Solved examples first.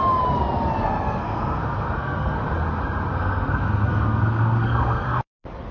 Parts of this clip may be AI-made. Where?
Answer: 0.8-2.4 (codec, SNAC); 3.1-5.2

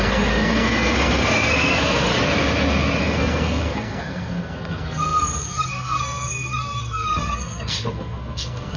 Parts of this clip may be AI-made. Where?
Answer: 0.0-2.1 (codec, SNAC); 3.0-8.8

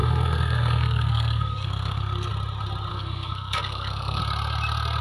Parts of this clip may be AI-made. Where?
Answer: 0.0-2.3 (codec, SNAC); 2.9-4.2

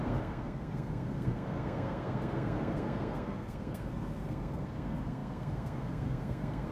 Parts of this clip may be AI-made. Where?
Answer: 0.0-6.7 (codec, SNAC)

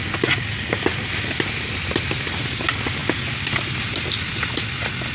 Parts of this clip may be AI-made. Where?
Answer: none

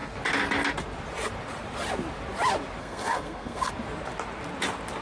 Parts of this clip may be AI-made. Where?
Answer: 2.8-3.7 (codec, SNAC)

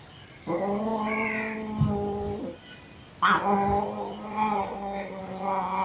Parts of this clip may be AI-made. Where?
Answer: 4.6-5.2 (codec, SNAC)